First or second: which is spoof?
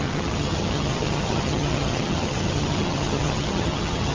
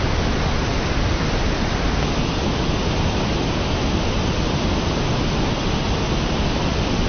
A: first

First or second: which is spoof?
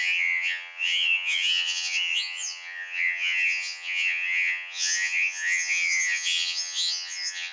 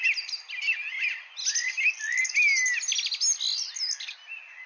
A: first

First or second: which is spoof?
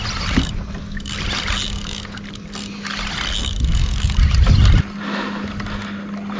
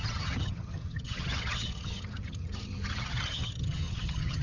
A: second